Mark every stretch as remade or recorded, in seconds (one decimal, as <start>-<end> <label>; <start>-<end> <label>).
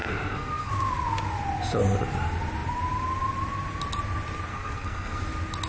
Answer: 0.0-0.7 remade; 0.7-4.5 recorded; 4.5-5.2 remade; 5.2-5.7 recorded